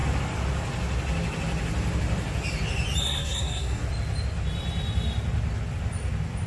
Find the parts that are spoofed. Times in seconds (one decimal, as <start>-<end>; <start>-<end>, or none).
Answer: 3.0-3.8